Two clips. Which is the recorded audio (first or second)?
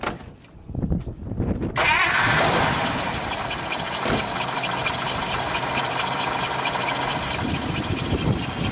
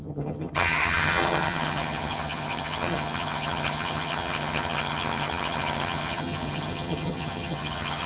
first